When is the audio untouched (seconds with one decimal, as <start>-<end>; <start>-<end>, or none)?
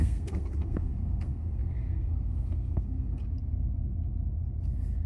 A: 3.2-5.1